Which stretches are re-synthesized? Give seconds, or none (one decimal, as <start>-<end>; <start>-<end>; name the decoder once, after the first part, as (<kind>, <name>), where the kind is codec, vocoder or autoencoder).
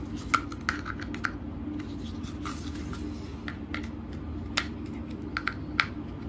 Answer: none